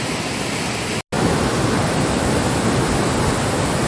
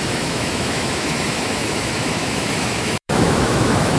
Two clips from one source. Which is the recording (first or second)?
first